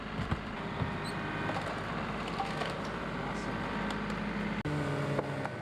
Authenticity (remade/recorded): recorded